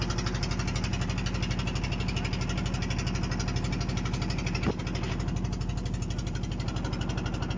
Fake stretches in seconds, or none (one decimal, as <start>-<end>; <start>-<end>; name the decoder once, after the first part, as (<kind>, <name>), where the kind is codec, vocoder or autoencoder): none